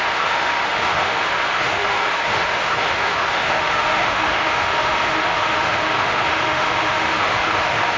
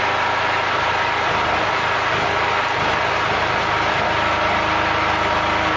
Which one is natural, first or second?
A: second